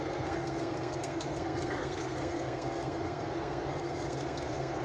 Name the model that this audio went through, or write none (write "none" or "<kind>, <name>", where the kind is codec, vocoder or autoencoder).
codec, SNAC